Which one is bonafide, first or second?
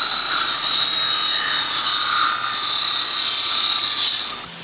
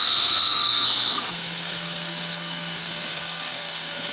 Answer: first